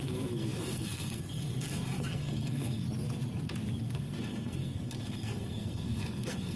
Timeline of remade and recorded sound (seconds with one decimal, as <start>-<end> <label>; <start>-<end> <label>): 0.0-2.8 remade; 2.8-3.8 recorded; 3.8-6.6 remade